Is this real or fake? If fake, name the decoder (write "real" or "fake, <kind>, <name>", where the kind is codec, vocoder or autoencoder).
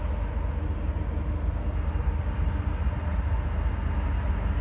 real